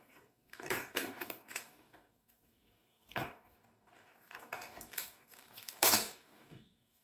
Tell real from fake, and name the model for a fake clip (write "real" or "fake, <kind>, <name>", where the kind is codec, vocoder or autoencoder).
fake, codec, DAC